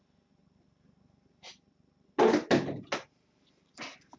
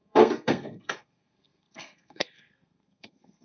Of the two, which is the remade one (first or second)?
second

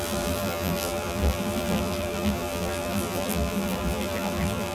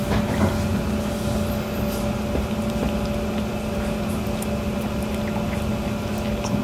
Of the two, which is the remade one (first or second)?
first